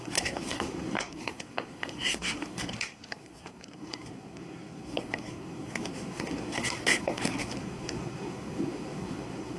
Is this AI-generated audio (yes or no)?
yes